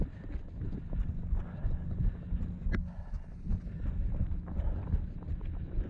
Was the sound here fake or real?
real